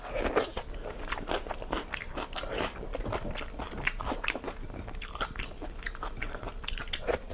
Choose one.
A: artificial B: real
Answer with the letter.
B